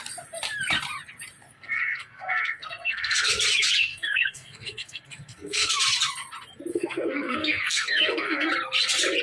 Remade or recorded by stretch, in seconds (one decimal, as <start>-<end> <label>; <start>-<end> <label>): 0.0-1.5 recorded; 1.5-3.3 remade; 3.3-3.9 recorded; 3.9-5.7 remade; 5.7-6.7 recorded; 6.7-8.5 remade; 8.5-9.2 recorded